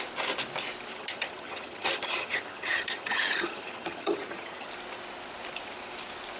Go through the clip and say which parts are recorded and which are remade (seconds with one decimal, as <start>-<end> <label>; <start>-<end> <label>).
0.0-0.9 recorded; 0.9-4.7 remade; 4.7-6.4 recorded